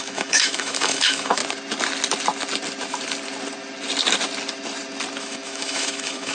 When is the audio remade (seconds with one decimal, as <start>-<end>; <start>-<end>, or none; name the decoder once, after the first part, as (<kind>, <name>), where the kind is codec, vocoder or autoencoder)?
0.0-1.4 (autoencoder, DAC-VAE); 5.2-6.3